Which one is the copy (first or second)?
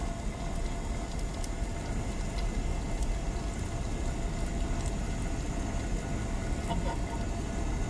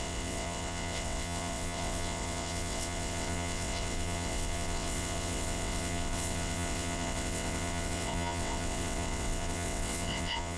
second